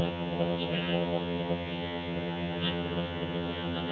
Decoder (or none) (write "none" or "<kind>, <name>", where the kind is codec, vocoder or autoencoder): vocoder, HiFi-GAN